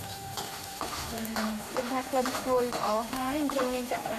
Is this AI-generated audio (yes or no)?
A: yes